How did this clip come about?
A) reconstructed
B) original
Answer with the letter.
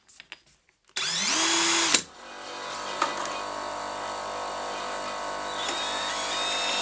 B